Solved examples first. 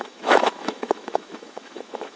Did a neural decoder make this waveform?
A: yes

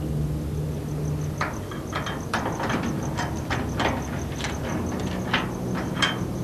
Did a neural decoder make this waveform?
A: no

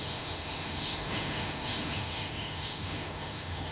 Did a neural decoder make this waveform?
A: yes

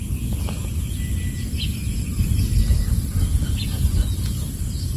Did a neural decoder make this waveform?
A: no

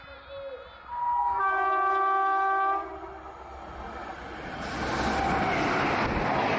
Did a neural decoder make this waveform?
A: no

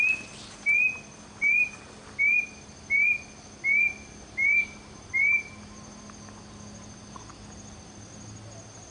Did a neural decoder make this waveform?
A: no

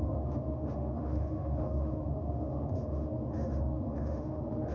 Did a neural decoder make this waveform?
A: yes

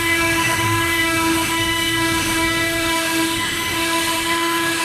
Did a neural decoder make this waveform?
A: yes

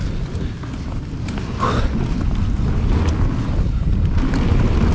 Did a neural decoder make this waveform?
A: no